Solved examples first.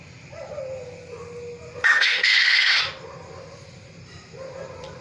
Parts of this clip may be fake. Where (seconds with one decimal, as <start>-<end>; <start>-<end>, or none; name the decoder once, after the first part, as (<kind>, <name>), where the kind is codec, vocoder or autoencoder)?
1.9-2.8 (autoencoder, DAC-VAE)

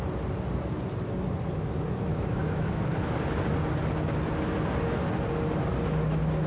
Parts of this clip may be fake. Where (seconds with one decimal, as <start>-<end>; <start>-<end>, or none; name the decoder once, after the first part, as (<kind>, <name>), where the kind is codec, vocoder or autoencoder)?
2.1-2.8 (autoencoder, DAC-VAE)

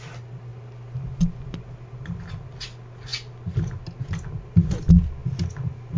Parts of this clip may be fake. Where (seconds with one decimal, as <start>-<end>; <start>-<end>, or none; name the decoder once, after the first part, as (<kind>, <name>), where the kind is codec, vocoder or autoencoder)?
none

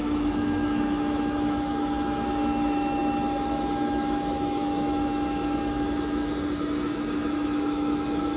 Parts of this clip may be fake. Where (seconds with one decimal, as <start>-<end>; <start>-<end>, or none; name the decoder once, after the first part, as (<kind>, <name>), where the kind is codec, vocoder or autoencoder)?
0.0-8.4 (autoencoder, DAC-VAE)

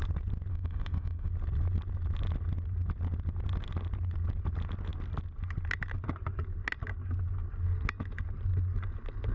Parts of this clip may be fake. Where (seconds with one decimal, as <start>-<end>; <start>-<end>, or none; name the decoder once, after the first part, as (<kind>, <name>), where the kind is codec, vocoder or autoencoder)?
0.5-1.3 (autoencoder, DAC-VAE)

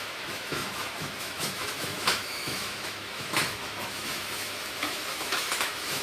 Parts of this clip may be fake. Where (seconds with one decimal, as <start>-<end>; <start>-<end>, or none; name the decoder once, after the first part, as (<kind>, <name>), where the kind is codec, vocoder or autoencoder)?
0.0-6.0 (autoencoder, DAC-VAE)